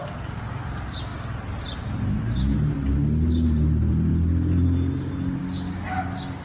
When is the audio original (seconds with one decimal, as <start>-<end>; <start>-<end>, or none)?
0.0-6.4

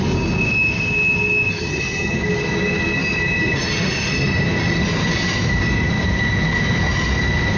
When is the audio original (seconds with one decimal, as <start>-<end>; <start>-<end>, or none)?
0.0-1.6; 2.2-7.6

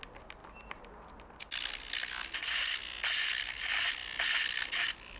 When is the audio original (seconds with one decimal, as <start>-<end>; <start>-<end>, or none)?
0.0-5.2